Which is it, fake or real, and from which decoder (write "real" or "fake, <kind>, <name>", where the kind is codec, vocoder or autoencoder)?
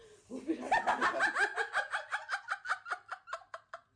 real